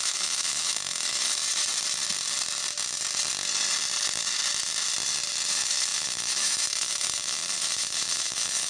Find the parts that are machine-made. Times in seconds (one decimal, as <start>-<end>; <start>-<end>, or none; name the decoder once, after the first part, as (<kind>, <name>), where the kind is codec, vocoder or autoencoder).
0.0-1.4 (autoencoder, DAC-VAE); 5.5-8.7